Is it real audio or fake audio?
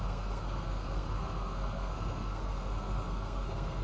fake